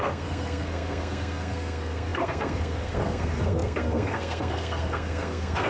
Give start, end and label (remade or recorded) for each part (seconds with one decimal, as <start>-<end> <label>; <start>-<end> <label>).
0.0-5.7 remade